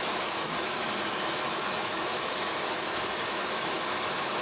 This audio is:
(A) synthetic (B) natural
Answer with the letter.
A